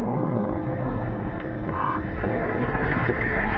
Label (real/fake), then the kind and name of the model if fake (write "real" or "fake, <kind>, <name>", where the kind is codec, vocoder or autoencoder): fake, codec, SNAC